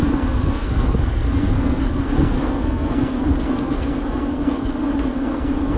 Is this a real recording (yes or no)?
no